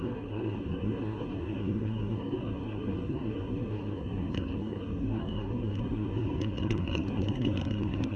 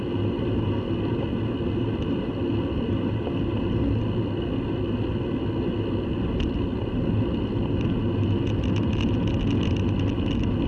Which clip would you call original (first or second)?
second